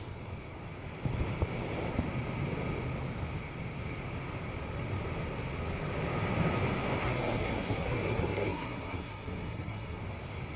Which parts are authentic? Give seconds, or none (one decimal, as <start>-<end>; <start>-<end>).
0.0-7.0; 10.0-10.6